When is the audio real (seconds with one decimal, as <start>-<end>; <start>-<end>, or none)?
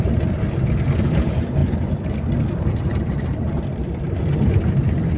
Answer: 0.0-5.2